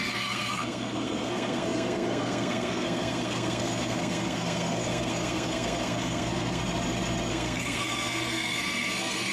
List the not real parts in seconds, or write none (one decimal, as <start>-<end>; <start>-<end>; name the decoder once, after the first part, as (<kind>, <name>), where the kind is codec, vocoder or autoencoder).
0.0-6.6 (codec, SNAC); 7.3-9.3